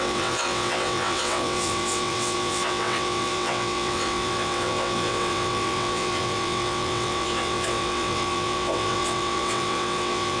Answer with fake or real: fake